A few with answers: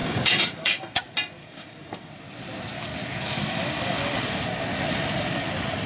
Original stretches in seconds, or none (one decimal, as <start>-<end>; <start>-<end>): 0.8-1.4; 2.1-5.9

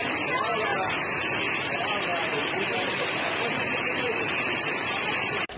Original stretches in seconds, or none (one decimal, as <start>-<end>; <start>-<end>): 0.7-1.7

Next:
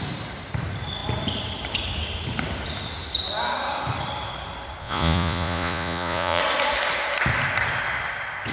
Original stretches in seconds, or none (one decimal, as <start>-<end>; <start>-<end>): 0.0-4.8; 6.4-8.5

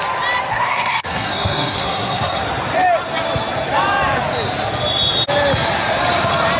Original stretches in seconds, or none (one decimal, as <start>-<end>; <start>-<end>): 0.0-0.5; 2.4-6.6

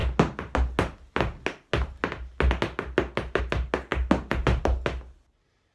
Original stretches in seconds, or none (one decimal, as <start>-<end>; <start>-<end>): 0.0-5.7

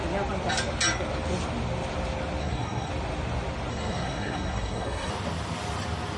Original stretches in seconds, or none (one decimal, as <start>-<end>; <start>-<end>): 0.0-2.4; 2.9-3.7; 5.1-6.2